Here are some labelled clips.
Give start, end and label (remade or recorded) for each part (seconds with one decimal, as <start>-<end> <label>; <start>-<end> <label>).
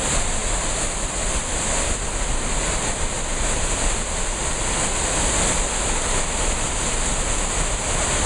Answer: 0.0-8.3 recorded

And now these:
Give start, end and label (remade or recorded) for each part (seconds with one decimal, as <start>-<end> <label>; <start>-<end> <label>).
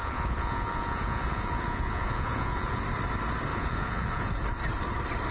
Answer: 0.0-2.8 remade; 2.8-3.5 recorded; 3.5-4.3 remade; 4.3-5.3 recorded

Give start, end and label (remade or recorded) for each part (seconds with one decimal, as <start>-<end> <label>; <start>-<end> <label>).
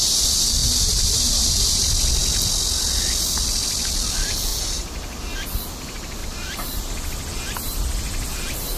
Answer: 0.0-4.5 recorded; 4.5-5.3 remade; 5.3-6.2 recorded; 6.2-6.9 remade; 6.9-8.8 recorded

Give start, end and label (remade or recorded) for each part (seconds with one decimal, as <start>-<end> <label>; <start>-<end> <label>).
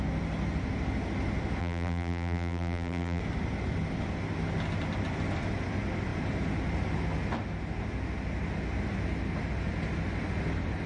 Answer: 0.0-1.6 recorded; 1.6-3.2 remade; 3.2-10.9 recorded